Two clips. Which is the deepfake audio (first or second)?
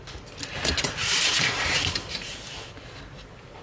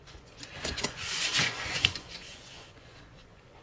second